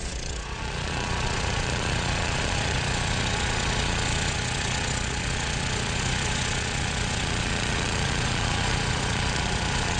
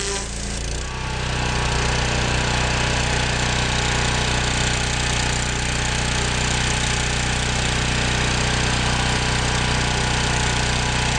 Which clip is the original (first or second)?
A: second